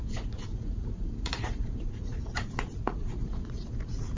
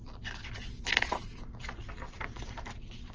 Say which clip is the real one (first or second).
second